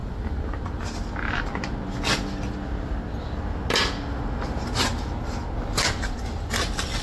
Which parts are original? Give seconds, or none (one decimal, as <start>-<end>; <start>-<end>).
0.0-7.0